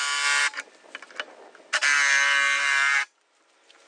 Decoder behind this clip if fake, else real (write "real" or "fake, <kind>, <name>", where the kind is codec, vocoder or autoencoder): real